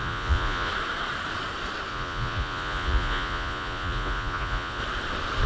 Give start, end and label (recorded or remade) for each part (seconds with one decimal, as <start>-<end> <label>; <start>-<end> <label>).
0.0-0.7 remade; 0.7-1.9 recorded; 1.9-4.8 remade; 4.8-5.5 recorded